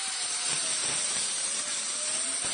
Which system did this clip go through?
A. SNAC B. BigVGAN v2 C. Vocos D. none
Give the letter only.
B